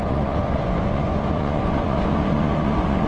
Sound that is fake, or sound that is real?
fake